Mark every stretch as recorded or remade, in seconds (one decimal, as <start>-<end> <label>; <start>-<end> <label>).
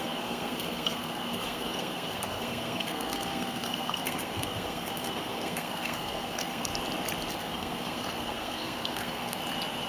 0.0-6.7 remade; 6.7-7.3 recorded; 7.3-9.4 remade; 9.4-9.9 recorded